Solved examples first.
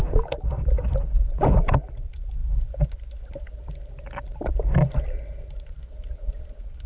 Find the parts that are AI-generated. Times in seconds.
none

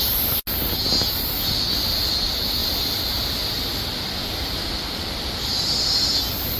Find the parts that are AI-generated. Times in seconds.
2.6-6.6 (vocoder, BigVGAN v2)

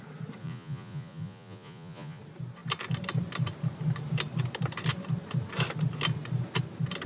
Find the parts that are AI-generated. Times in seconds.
0.4-2.2 (vocoder, Vocos)

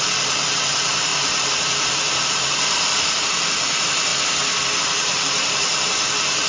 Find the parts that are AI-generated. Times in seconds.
0.0-4.1 (vocoder, BigVGAN v2); 4.8-6.5

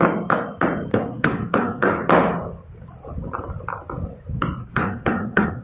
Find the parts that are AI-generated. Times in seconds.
0.9-2.0 (codec, SNAC); 4.6-5.6

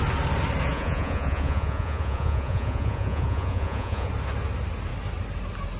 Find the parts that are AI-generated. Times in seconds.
0.7-4.1 (vocoder, Vocos)